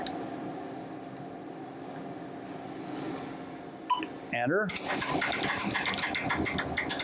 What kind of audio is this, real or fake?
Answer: real